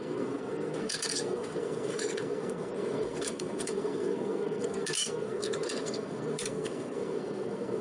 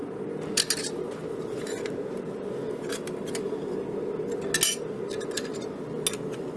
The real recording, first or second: second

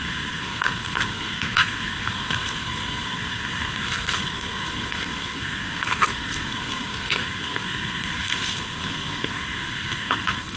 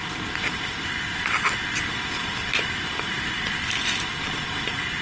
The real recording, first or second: second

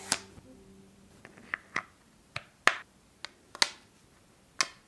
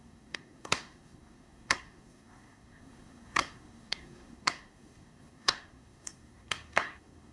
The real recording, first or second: first